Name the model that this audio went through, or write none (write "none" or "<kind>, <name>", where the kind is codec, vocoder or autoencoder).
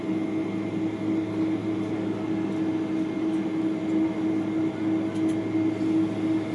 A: none